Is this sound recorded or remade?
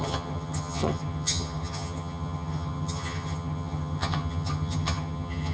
remade